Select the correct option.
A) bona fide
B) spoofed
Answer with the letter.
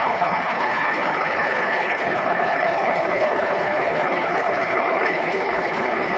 B